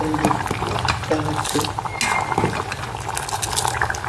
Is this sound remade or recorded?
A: recorded